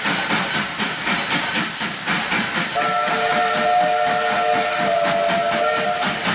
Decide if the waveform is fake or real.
real